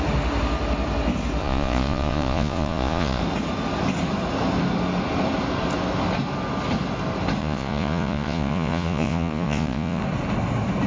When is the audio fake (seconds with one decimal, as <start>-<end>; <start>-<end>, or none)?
1.4-3.2; 7.4-10.0